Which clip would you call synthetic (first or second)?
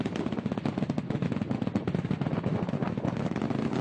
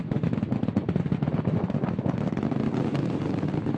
second